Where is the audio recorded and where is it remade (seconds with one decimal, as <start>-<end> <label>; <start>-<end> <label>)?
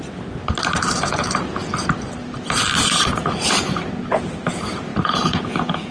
0.0-4.9 recorded; 4.9-5.9 remade